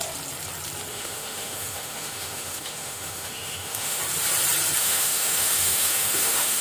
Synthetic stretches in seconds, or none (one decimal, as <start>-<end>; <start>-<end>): 0.9-4.0; 4.8-6.6